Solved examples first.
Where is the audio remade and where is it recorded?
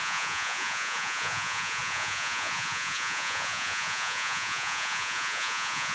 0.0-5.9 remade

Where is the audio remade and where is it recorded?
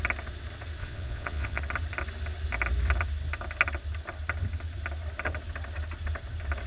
0.0-0.8 recorded; 0.8-1.6 remade; 1.6-6.7 recorded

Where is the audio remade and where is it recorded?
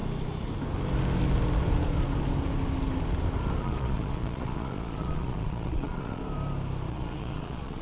0.0-3.6 recorded; 3.6-6.2 remade; 6.2-6.9 recorded; 6.9-7.8 remade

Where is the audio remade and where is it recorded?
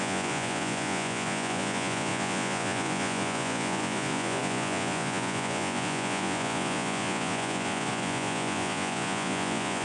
0.0-9.8 remade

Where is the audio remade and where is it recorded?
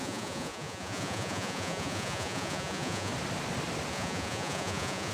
0.0-3.1 remade; 3.1-3.9 recorded; 3.9-5.1 remade